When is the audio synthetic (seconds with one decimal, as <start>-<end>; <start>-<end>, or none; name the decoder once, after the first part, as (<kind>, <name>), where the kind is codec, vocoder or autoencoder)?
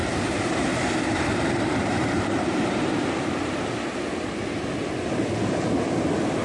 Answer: 0.0-3.8 (vocoder, BigVGAN v2)